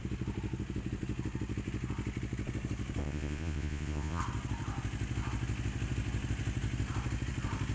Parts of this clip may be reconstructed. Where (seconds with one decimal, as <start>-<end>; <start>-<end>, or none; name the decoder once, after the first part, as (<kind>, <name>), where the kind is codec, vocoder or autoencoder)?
3.0-4.2 (vocoder, Vocos)